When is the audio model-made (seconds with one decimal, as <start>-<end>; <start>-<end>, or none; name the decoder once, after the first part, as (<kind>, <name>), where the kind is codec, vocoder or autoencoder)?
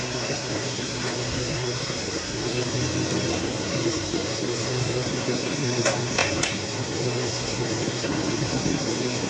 0.0-2.8 (codec, SNAC); 3.3-9.3